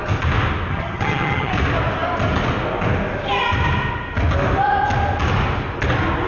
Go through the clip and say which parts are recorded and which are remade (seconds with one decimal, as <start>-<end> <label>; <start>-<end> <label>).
0.0-0.7 recorded; 0.7-1.5 remade; 1.5-6.3 recorded